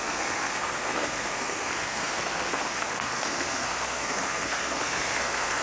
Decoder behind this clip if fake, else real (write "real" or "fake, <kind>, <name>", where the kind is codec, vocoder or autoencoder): fake, codec, SNAC